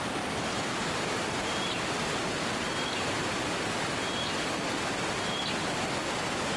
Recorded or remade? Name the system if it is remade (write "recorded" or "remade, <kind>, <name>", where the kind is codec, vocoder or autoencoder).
recorded